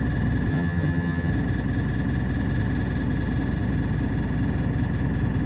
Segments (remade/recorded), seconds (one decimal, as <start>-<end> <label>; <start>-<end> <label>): 0.0-0.5 recorded; 0.5-1.3 remade; 1.3-5.5 recorded